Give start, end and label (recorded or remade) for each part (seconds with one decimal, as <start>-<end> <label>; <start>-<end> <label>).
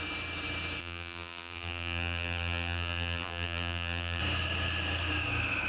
0.0-0.8 recorded; 0.8-4.2 remade; 4.2-5.7 recorded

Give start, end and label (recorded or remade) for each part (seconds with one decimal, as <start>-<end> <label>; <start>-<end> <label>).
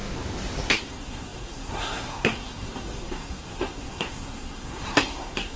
0.0-0.7 recorded; 0.7-5.6 remade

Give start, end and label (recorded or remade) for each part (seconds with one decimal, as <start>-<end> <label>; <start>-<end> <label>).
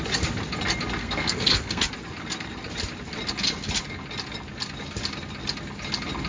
0.0-1.0 recorded; 1.0-1.8 remade; 1.8-6.3 recorded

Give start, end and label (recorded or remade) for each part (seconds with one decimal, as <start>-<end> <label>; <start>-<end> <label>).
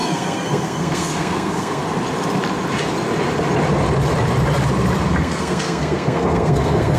0.0-1.8 remade; 1.8-5.1 recorded; 5.1-7.0 remade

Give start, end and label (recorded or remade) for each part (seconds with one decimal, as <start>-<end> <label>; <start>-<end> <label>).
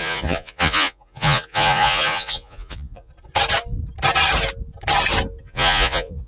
0.0-3.1 remade; 3.1-5.4 recorded; 5.4-6.3 remade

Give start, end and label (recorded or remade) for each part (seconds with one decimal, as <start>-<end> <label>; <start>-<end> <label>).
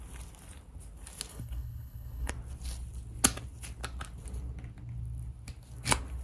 0.0-1.3 recorded; 1.3-2.3 remade; 2.3-6.2 recorded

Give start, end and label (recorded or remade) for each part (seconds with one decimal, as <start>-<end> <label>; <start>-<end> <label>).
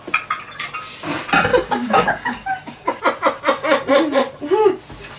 0.0-1.5 recorded; 1.5-3.0 remade; 3.0-5.2 recorded